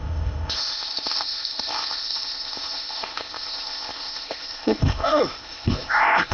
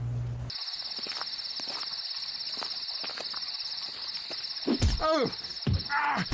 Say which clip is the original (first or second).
second